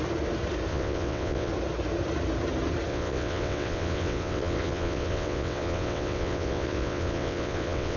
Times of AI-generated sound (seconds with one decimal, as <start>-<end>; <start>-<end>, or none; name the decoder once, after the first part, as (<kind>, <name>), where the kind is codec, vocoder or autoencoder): 0.7-1.5 (vocoder, WaveNeXt); 2.9-8.0